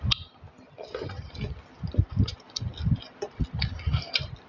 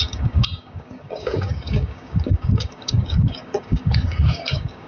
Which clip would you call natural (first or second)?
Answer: first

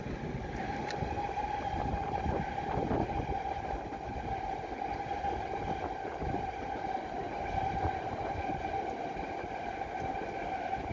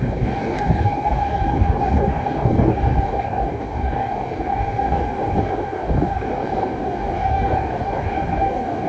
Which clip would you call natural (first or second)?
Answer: first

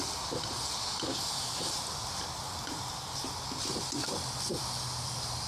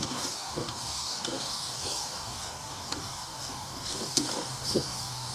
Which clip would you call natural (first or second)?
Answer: first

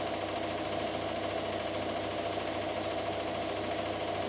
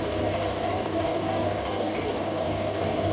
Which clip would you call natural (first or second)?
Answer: first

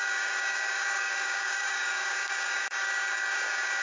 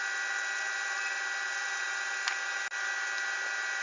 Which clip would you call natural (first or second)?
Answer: second